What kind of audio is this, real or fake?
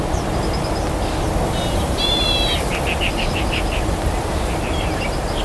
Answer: real